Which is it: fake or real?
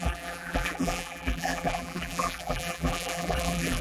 fake